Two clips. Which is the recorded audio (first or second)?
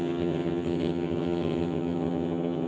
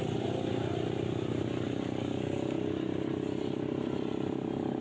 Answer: second